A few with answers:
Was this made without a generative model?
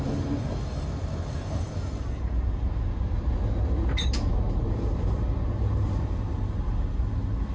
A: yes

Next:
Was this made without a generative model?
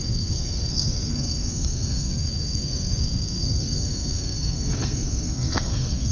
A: no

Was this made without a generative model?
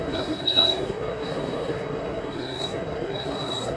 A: no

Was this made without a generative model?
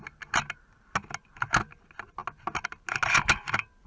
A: yes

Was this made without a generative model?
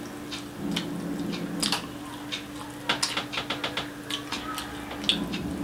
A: yes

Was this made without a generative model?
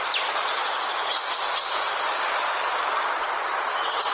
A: yes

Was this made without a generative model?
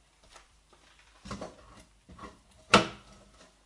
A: yes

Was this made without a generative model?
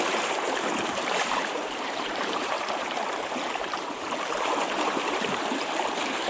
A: no